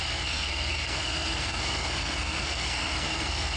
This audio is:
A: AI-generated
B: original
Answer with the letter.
A